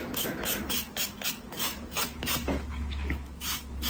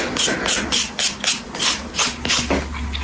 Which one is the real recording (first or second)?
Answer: second